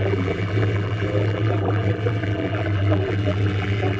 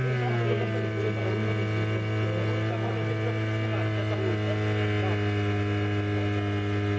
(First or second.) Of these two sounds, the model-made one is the first